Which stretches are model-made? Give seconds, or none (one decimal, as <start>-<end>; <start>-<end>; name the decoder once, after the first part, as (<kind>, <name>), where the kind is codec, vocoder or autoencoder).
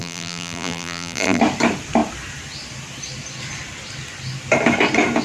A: 0.0-1.4 (vocoder, BigVGAN v2)